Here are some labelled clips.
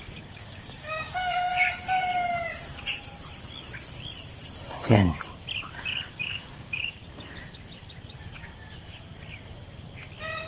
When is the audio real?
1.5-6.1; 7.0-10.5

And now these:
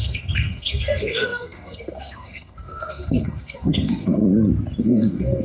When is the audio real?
4.2-4.8

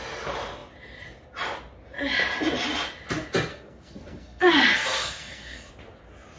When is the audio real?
0.0-3.5; 5.7-6.4

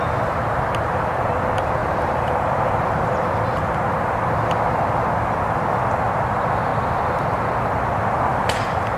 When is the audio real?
0.0-1.8; 3.5-8.3

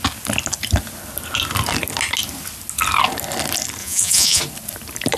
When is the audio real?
0.0-3.8; 4.4-5.2

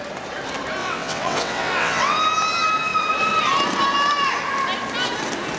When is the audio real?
0.0-0.8; 2.2-5.6

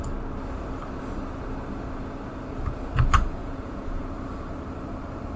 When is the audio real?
0.0-3.4; 4.0-5.4